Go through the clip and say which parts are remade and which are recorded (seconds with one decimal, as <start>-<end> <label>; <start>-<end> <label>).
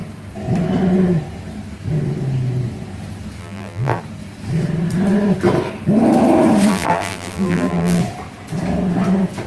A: 0.0-3.4 recorded; 3.4-4.0 remade; 4.0-6.7 recorded; 6.7-8.0 remade; 8.0-9.5 recorded